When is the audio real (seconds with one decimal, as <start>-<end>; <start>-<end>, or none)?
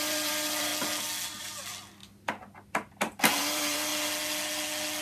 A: 0.7-1.4; 2.0-3.4; 3.9-5.0